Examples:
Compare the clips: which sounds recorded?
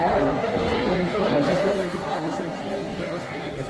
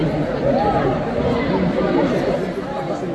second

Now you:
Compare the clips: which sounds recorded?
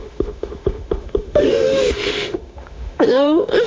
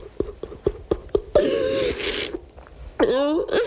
second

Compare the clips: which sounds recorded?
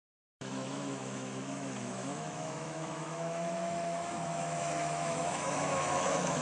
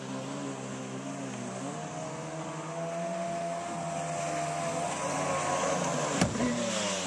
second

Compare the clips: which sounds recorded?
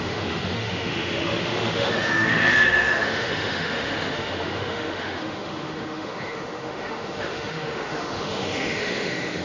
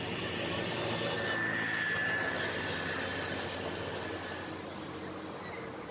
second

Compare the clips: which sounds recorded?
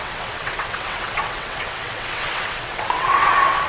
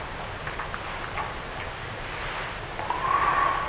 second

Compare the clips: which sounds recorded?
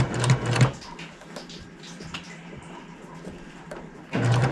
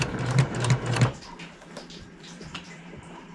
first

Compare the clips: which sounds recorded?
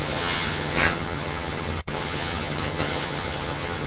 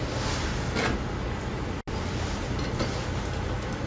second